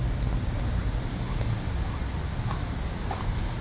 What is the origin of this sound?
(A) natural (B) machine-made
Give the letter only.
A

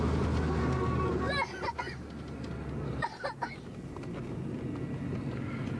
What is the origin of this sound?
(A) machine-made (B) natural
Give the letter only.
B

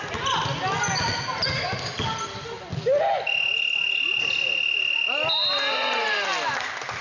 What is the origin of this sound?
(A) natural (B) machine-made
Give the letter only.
A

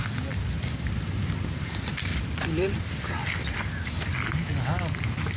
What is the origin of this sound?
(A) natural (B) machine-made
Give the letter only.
A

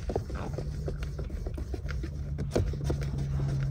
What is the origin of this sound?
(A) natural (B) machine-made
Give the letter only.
A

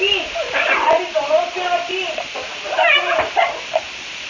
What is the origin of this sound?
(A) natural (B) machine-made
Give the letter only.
A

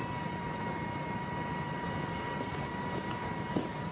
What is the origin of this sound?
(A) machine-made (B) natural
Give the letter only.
B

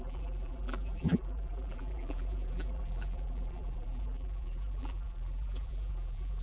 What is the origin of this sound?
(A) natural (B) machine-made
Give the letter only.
B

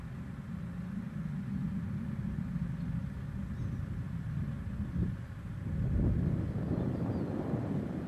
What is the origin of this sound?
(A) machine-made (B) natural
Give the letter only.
B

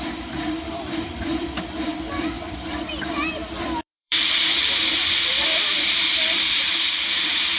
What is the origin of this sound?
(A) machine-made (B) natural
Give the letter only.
A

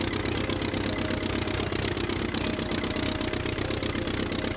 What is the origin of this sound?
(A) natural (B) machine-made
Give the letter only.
A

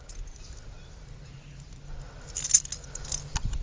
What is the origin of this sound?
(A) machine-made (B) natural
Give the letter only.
B